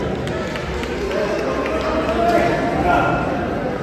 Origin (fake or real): real